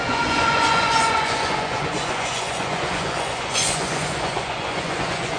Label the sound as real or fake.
fake